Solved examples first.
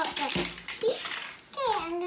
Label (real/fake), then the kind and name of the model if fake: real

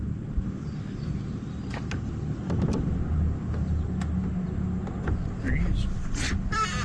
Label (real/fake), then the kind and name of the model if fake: real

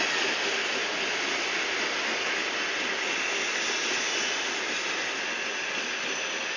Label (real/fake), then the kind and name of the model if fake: real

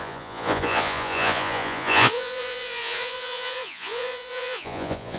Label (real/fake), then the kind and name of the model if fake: fake, vocoder, Vocos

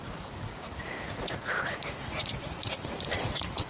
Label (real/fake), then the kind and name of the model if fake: fake, vocoder, Vocos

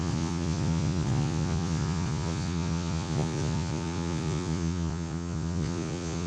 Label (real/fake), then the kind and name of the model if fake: fake, vocoder, Vocos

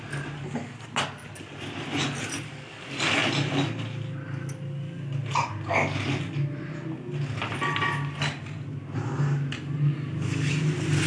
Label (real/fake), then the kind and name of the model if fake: real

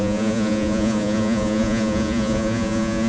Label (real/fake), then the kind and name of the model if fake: fake, vocoder, Vocos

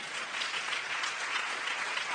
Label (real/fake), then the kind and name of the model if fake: fake, vocoder, Vocos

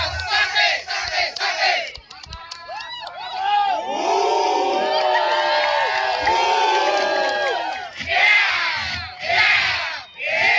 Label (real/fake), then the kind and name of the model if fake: real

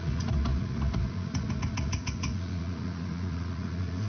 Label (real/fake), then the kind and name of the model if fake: fake, vocoder, Vocos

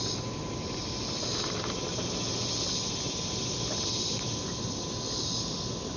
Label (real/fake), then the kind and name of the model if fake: real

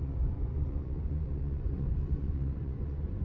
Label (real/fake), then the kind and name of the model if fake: fake, vocoder, Vocos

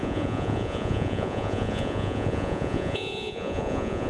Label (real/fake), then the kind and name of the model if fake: fake, vocoder, Vocos